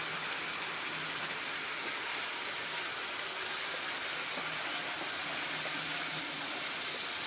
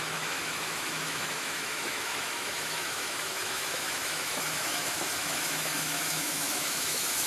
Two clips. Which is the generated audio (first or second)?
second